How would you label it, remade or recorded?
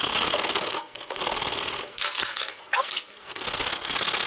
remade